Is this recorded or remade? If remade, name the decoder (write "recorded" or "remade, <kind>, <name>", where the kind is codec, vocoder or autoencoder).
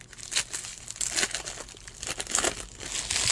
recorded